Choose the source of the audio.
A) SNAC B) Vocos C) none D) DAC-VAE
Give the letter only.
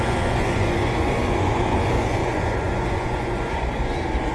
B